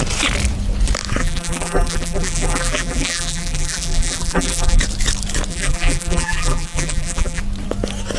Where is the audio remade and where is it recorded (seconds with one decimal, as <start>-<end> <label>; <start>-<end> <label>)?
0.0-1.2 recorded; 1.2-4.8 remade; 4.8-5.5 recorded; 5.5-7.4 remade; 7.4-8.2 recorded